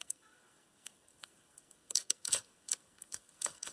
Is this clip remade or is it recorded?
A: remade